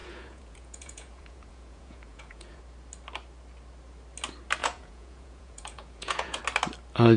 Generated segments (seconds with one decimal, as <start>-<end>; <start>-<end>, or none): 0.0-2.6; 4.6-6.4